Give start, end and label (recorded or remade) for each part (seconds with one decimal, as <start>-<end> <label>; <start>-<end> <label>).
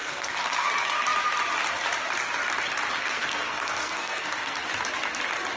0.0-0.7 remade; 0.7-3.0 recorded; 3.0-4.6 remade; 4.6-5.6 recorded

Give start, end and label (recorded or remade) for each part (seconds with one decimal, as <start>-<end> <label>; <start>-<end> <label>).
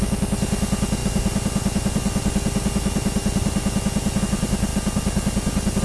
0.0-5.8 recorded